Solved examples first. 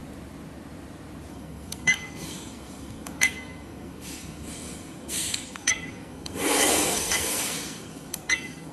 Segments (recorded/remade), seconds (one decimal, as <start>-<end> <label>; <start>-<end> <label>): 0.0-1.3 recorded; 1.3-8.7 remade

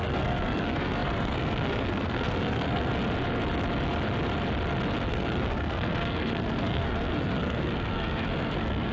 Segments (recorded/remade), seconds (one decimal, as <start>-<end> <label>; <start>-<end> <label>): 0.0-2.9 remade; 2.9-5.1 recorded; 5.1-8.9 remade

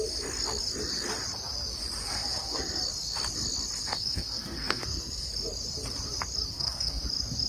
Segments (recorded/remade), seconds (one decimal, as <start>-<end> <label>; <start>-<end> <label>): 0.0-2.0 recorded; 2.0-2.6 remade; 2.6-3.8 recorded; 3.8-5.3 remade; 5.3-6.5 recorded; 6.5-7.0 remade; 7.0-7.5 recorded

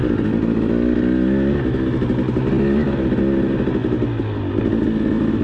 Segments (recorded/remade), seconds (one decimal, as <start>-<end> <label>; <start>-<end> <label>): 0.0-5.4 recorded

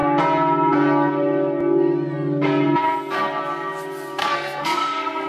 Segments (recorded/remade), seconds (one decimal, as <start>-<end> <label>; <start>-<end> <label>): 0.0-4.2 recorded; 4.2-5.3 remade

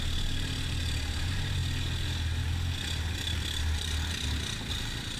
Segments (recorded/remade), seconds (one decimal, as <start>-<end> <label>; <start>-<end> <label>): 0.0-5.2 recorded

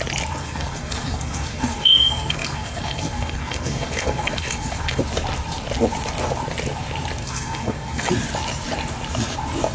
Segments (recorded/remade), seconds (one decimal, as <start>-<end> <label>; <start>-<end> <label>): 0.0-0.4 recorded; 0.4-5.0 remade; 5.0-7.2 recorded; 7.2-8.1 remade; 8.1-9.7 recorded

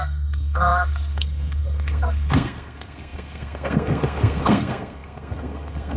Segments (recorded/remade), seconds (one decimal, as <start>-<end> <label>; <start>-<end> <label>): 0.0-6.0 remade